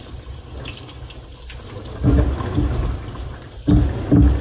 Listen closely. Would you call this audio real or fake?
real